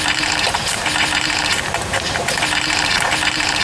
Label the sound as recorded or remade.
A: remade